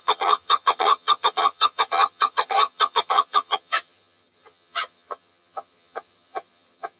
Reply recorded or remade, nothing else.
remade